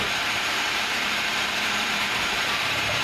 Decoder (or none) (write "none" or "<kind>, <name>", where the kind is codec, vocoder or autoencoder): vocoder, BigVGAN v2